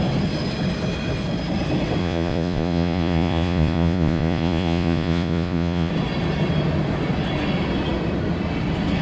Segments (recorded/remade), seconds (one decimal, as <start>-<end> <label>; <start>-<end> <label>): 0.0-2.0 recorded; 2.0-5.9 remade; 5.9-9.0 recorded